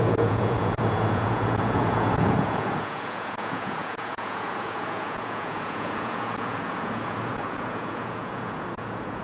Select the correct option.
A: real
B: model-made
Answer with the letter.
B